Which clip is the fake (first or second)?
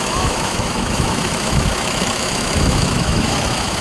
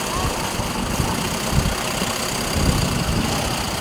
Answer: first